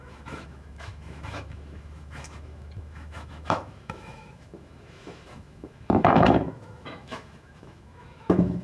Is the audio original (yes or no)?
no